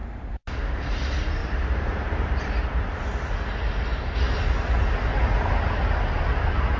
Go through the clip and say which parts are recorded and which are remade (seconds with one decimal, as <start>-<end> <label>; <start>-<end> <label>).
0.0-1.4 recorded; 1.4-2.5 remade; 2.5-6.8 recorded